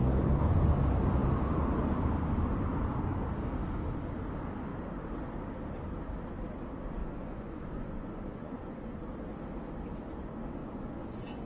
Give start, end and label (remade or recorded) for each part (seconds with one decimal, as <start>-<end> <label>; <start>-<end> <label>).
0.0-7.0 recorded; 7.0-9.0 remade; 9.0-10.6 recorded; 10.6-11.5 remade